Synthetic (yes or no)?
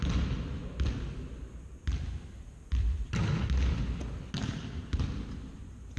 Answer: no